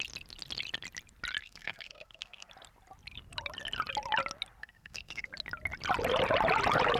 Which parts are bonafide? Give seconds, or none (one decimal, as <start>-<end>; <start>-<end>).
0.0-1.4; 2.5-4.6; 5.3-7.0